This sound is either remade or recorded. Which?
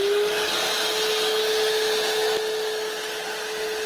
recorded